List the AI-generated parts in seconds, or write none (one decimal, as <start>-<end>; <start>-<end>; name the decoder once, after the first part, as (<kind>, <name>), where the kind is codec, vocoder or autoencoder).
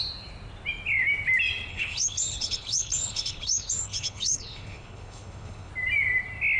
1.7-5.7 (codec, HILCodec)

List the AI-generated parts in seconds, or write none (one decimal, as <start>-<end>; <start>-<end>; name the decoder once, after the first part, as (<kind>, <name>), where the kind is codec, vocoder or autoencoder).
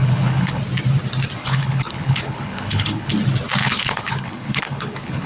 0.0-0.6 (codec, HILCodec); 1.4-3.1; 3.6-5.3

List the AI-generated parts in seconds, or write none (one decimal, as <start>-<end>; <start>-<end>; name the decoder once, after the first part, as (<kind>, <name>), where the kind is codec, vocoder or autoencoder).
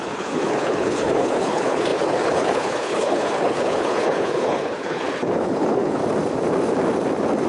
0.0-6.0 (codec, HILCodec)